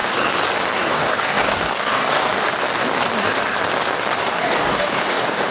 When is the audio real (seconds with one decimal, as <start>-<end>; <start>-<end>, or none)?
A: 0.0-0.8; 2.3-4.2